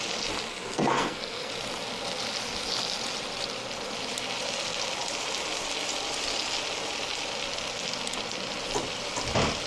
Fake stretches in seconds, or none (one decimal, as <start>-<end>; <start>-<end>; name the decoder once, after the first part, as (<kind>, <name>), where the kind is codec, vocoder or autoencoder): 0.5-1.5 (codec, SNAC)